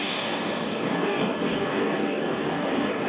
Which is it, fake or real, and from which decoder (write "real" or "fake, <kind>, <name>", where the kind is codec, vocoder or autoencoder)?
fake, codec, DAC